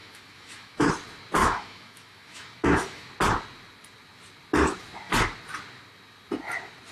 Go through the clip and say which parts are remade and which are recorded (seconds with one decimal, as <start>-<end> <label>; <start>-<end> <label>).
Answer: 0.0-0.9 remade; 0.9-1.4 recorded; 1.4-3.1 remade; 3.1-6.9 recorded